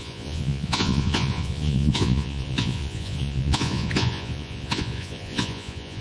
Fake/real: fake